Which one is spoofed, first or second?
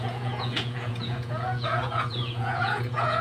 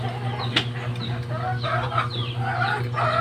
first